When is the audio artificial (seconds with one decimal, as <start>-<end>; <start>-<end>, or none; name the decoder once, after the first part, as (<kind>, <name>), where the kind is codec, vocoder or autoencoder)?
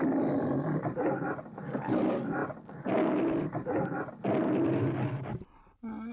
none